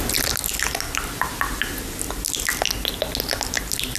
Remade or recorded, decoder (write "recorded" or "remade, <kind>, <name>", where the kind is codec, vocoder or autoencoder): recorded